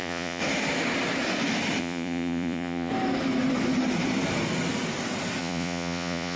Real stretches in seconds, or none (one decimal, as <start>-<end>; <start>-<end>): 0.4-1.8; 2.9-5.4